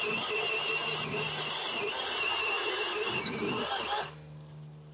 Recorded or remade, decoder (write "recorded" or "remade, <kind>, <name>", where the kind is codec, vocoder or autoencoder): recorded